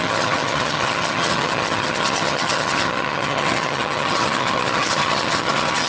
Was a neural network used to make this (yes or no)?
yes